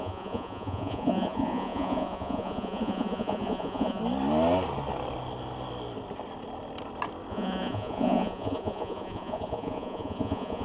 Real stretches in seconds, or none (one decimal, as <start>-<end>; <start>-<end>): 4.0-7.3